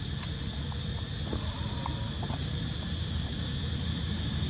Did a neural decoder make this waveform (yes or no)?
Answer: no